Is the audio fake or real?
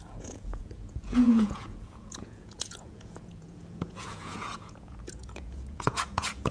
fake